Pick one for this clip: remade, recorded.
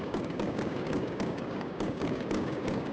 remade